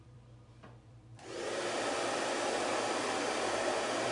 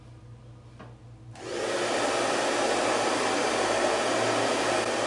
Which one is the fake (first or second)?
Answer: first